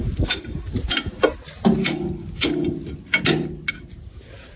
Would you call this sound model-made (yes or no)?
no